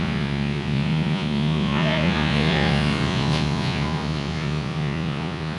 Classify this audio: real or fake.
fake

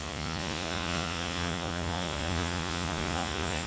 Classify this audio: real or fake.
fake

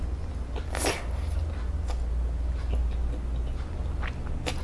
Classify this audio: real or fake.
real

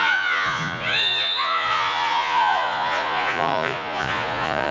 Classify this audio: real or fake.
fake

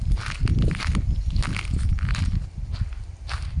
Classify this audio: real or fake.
real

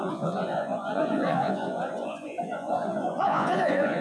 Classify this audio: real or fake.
fake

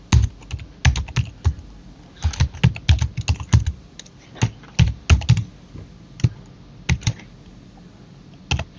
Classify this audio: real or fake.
real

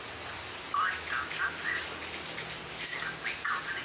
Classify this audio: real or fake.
real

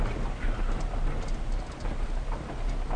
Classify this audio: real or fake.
real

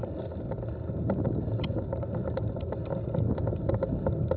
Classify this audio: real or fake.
real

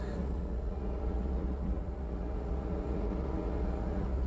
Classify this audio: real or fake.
fake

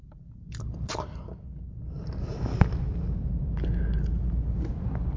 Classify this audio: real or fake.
real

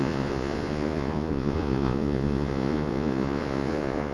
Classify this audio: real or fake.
fake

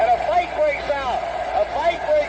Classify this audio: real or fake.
real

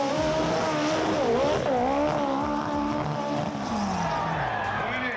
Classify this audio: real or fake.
real